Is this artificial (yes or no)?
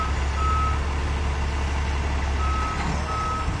no